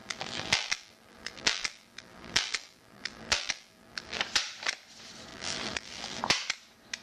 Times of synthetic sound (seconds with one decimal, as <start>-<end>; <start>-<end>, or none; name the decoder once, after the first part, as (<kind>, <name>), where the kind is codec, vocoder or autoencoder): 0.0-4.2 (vocoder, BigVGAN v2); 5.3-6.2